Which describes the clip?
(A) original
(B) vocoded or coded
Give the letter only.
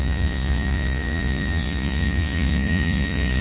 B